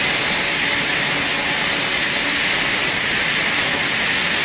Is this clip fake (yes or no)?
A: no